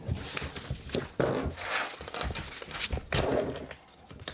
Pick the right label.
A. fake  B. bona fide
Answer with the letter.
B